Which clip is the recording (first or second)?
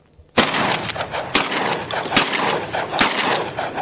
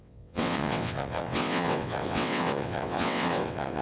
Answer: first